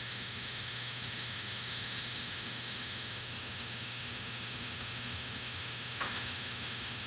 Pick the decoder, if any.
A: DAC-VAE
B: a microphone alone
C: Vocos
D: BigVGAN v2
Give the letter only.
A